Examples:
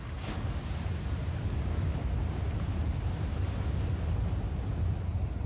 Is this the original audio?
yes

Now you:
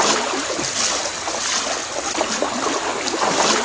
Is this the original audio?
yes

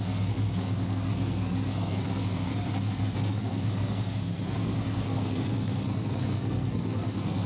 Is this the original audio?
no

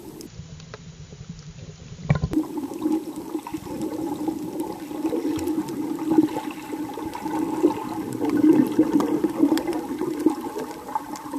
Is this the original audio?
yes